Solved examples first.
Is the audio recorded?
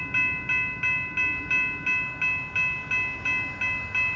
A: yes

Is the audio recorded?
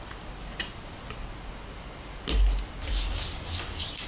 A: yes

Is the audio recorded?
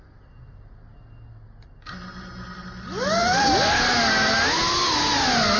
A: yes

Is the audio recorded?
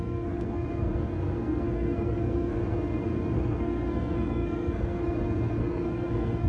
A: no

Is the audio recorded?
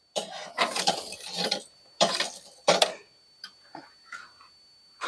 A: no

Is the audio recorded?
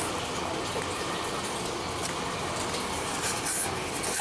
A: yes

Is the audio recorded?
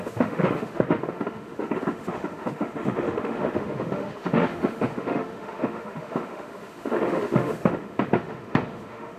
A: no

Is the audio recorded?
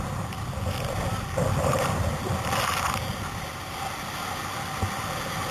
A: yes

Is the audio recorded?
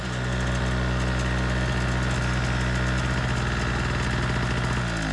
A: yes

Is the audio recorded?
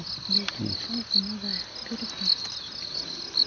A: yes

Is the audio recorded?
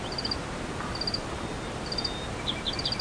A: yes